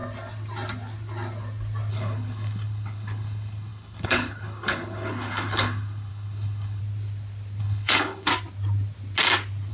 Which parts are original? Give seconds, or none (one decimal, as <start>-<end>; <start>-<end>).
0.0-1.9; 6.8-7.6; 8.3-9.7